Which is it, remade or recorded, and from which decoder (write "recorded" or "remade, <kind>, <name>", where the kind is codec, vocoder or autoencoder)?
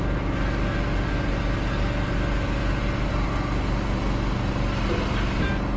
recorded